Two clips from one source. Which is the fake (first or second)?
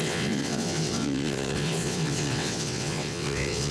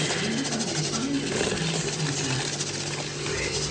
first